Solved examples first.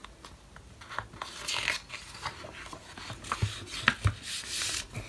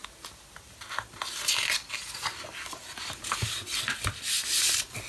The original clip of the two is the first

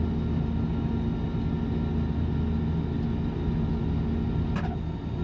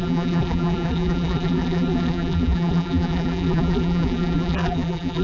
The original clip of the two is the first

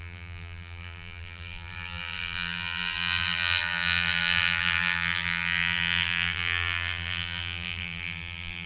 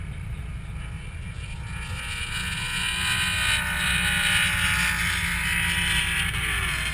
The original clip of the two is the second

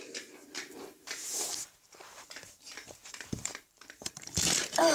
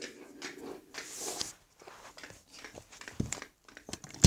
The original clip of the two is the second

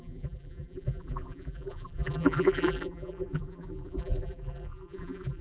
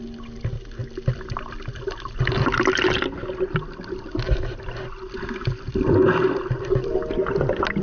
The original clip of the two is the second